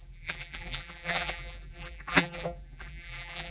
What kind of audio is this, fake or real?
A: fake